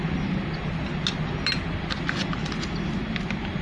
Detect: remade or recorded recorded